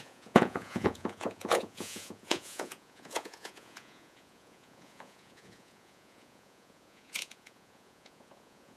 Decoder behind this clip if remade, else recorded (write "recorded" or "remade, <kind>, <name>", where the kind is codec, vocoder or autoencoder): remade, vocoder, Vocos